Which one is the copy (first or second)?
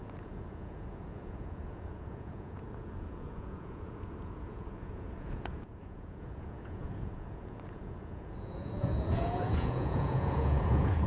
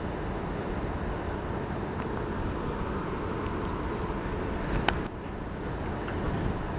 first